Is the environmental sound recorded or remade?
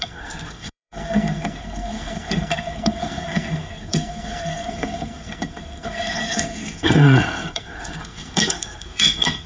remade